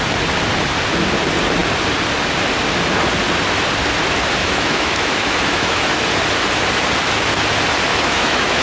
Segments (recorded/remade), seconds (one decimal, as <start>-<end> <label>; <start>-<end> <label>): 0.0-4.4 recorded; 4.4-5.9 remade; 5.9-7.9 recorded; 7.9-8.6 remade